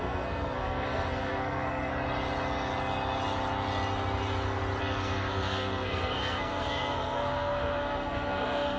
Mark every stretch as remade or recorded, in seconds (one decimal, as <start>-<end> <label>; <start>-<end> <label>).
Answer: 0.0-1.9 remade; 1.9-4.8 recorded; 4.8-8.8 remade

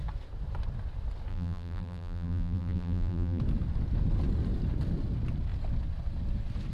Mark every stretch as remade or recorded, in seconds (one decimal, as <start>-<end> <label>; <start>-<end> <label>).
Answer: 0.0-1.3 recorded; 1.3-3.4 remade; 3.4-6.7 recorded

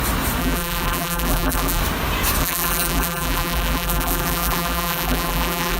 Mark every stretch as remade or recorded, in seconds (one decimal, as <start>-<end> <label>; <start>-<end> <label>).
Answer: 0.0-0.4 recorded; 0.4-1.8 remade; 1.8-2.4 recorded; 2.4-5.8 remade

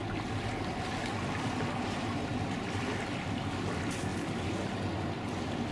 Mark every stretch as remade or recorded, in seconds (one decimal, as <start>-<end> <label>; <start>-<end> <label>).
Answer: 0.0-2.3 recorded; 2.3-3.0 remade; 3.0-4.1 recorded; 4.1-4.8 remade; 4.8-5.7 recorded

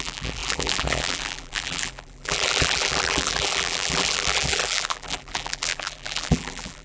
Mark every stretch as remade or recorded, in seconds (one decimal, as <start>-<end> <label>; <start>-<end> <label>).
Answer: 0.0-6.8 remade

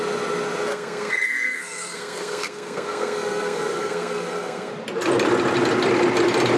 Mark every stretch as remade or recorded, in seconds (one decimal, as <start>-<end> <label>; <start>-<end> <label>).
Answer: 0.0-0.7 recorded; 0.7-4.7 remade; 4.7-6.6 recorded